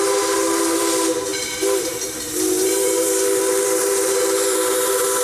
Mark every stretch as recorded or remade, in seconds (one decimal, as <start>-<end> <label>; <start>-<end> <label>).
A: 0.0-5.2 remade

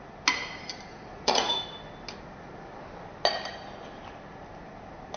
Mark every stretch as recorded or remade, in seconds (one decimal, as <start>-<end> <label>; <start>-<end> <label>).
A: 0.0-0.9 recorded; 0.9-1.5 remade; 1.5-5.2 recorded

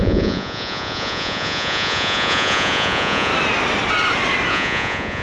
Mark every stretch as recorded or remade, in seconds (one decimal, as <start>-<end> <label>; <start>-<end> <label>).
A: 0.0-3.3 remade; 3.3-4.5 recorded; 4.5-5.2 remade

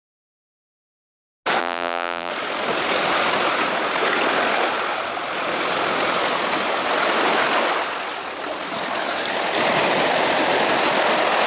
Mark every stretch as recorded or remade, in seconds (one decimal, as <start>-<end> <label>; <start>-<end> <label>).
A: 0.0-1.6 recorded; 1.6-2.3 remade; 2.3-11.5 recorded

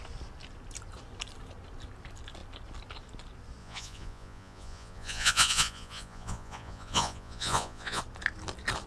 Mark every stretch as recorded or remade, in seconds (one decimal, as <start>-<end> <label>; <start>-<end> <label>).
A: 0.0-3.6 recorded; 3.6-8.0 remade; 8.0-8.9 recorded